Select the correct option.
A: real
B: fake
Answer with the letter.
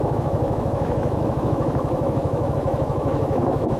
B